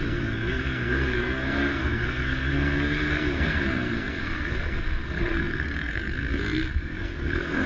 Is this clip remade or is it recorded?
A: remade